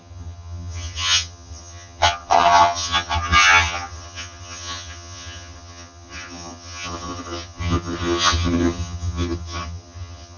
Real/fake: fake